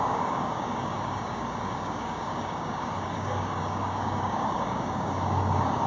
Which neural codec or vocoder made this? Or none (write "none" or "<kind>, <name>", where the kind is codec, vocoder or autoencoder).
codec, DAC